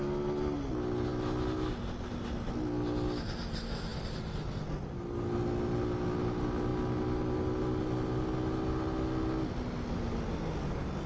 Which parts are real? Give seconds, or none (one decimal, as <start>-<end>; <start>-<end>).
0.0-11.1